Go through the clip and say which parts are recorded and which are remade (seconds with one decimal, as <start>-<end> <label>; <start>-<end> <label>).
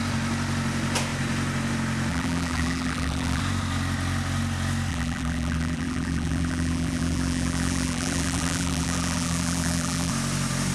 0.0-2.1 recorded; 2.1-3.4 remade; 3.4-4.9 recorded; 4.9-10.1 remade; 10.1-10.7 recorded